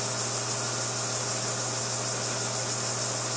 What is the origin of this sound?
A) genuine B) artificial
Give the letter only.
A